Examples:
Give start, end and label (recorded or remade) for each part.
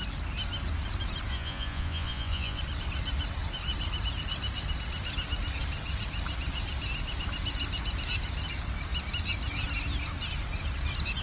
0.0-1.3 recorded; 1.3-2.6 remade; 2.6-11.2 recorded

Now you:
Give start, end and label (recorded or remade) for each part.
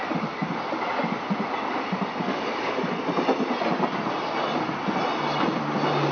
0.0-2.3 recorded; 2.3-3.0 remade; 3.0-6.1 recorded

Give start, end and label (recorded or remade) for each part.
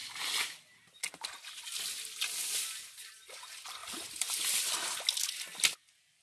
0.0-6.2 recorded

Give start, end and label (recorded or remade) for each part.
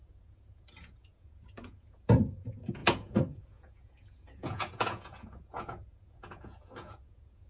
0.0-7.5 remade